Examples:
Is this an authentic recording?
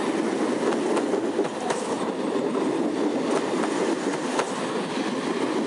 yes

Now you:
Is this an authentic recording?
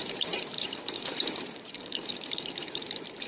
no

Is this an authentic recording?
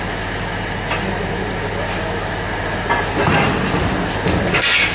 yes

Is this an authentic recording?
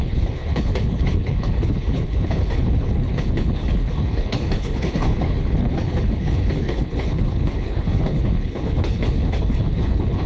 no